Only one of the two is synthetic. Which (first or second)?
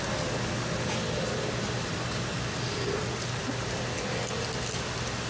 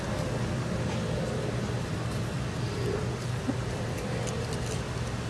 second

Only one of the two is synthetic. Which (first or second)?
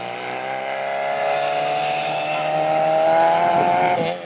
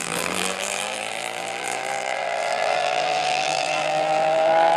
second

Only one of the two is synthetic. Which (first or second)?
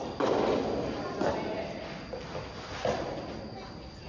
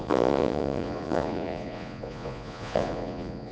second